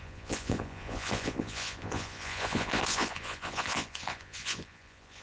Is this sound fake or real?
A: fake